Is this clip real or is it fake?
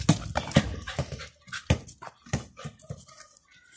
real